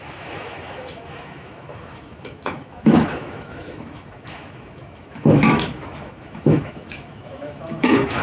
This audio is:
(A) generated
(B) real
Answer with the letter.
A